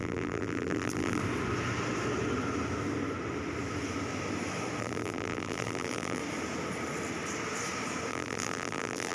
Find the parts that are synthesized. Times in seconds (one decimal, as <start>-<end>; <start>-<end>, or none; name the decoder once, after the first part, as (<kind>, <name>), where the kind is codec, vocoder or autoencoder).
0.0-1.2 (vocoder, BigVGAN v2); 4.8-6.2; 8.1-9.1